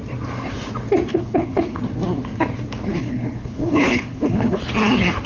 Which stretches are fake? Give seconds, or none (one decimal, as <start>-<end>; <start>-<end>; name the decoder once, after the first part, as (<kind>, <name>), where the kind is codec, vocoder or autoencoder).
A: 1.1-1.8 (codec, HILCodec); 2.9-4.6